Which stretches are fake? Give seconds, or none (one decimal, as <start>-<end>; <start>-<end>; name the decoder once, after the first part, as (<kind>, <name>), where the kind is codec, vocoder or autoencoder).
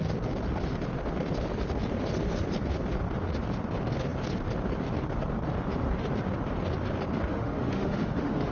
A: 7.3-8.5 (autoencoder, DAC-VAE)